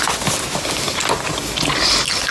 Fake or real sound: real